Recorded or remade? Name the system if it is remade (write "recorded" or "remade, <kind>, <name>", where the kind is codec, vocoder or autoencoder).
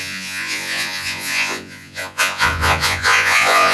remade, vocoder, Vocos